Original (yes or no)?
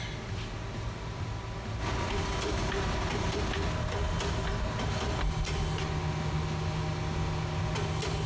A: yes